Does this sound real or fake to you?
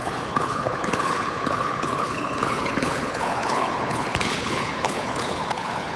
fake